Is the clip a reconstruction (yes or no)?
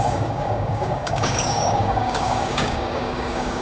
yes